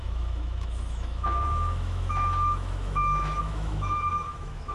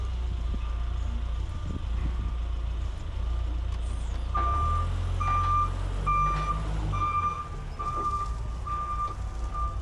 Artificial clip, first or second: first